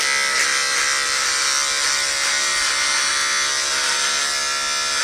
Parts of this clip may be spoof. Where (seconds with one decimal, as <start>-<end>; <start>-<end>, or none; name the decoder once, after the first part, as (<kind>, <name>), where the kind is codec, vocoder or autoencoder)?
none